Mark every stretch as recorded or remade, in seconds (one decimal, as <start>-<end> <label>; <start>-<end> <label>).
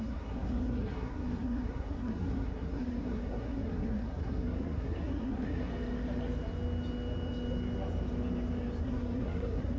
0.0-5.7 remade; 5.7-8.8 recorded; 8.8-9.8 remade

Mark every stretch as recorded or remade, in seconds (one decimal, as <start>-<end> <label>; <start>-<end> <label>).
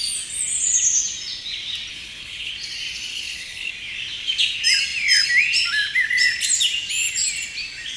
0.0-1.9 recorded; 1.9-2.5 remade; 2.5-3.1 recorded; 3.1-3.7 remade; 3.7-8.0 recorded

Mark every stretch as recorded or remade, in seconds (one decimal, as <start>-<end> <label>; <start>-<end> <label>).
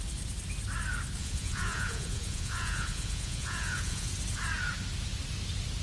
0.0-1.2 recorded; 1.2-4.1 remade; 4.1-5.8 recorded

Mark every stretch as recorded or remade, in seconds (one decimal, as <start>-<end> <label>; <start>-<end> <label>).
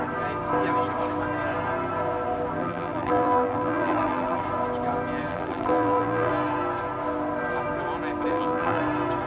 0.0-2.6 recorded; 2.6-4.4 remade; 4.4-5.3 recorded; 5.3-6.3 remade; 6.3-8.3 recorded; 8.3-8.8 remade; 8.8-9.3 recorded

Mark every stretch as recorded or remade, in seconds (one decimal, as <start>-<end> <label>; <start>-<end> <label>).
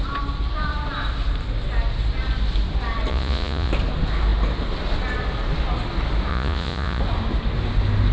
0.0-3.1 recorded; 3.1-3.7 remade; 3.7-6.3 recorded; 6.3-7.0 remade; 7.0-8.1 recorded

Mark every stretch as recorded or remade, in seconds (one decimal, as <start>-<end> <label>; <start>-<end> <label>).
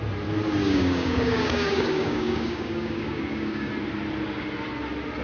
0.0-0.6 recorded; 0.6-3.7 remade; 3.7-5.2 recorded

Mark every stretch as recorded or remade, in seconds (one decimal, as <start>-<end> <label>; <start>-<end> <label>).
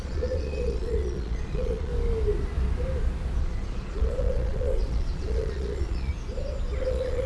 0.0-1.9 remade; 1.9-3.4 recorded; 3.4-6.1 remade; 6.1-6.8 recorded; 6.8-7.3 remade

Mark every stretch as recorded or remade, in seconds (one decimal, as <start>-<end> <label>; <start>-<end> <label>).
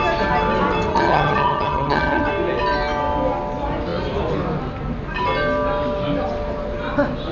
0.0-0.9 recorded; 0.9-2.2 remade; 2.2-7.3 recorded